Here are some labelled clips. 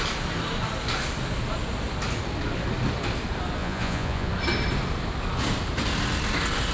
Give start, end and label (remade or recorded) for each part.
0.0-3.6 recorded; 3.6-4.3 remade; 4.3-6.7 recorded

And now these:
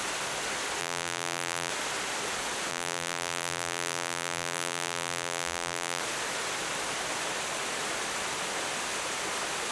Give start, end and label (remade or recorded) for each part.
0.0-0.8 recorded; 0.8-1.7 remade; 1.7-2.7 recorded; 2.7-6.0 remade; 6.0-9.7 recorded

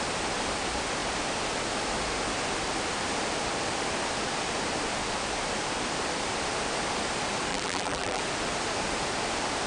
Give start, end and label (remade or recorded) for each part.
0.0-7.5 recorded; 7.5-8.2 remade; 8.2-9.7 recorded

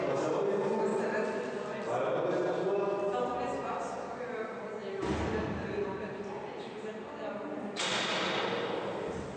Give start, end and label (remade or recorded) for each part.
0.0-9.4 recorded

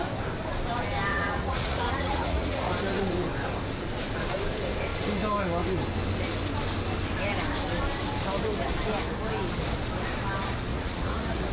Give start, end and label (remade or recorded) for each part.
0.0-1.1 recorded; 1.1-2.7 remade; 2.7-10.7 recorded; 10.7-11.5 remade

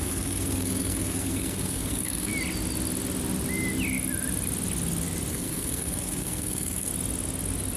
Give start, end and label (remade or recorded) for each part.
0.0-2.3 remade; 2.3-5.3 recorded; 5.3-6.9 remade; 6.9-7.8 recorded

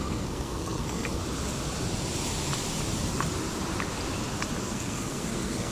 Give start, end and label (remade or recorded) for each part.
0.0-1.2 remade; 1.2-4.6 recorded; 4.6-5.7 remade

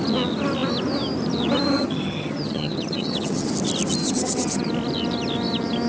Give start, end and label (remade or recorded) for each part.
0.0-1.7 recorded; 1.7-3.5 remade; 3.5-4.0 recorded; 4.0-4.7 remade; 4.7-5.9 recorded